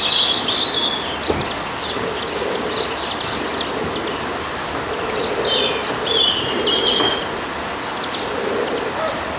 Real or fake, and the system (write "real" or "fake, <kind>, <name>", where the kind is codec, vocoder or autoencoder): real